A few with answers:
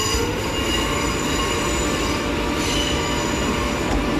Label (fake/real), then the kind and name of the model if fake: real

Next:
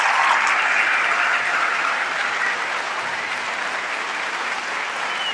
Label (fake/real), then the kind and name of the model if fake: real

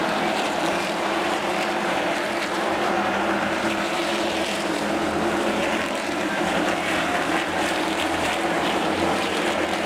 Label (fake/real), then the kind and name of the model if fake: fake, vocoder, BigVGAN v2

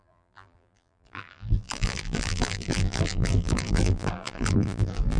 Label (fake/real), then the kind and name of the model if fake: fake, vocoder, BigVGAN v2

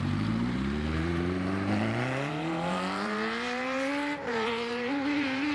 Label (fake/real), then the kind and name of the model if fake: fake, vocoder, BigVGAN v2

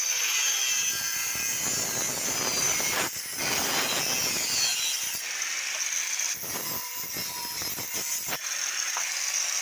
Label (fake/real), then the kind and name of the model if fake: real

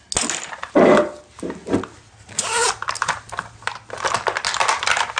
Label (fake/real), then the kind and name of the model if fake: real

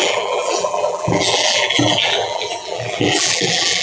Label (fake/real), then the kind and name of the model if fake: fake, vocoder, BigVGAN v2